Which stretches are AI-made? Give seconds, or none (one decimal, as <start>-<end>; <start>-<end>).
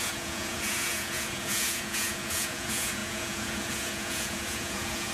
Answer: 0.0-5.1